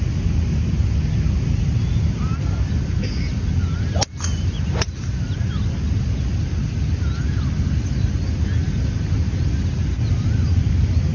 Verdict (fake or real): real